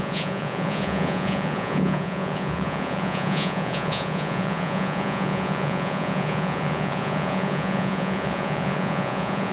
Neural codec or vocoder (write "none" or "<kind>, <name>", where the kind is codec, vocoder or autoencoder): vocoder, Vocos